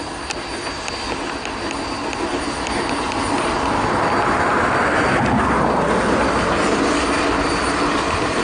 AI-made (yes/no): no